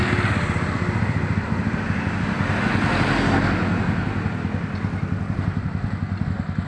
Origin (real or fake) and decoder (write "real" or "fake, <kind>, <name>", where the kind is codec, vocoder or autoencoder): real